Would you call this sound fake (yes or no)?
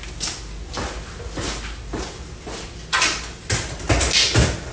no